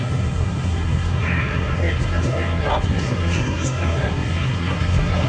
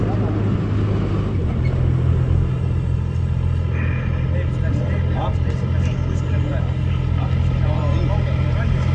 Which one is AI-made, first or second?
first